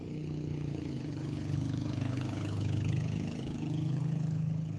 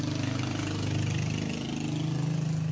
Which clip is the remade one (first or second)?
first